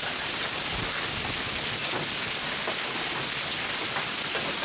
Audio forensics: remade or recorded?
recorded